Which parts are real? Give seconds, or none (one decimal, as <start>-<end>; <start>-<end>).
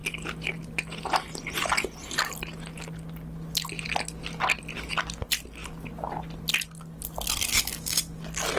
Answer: 0.0-8.6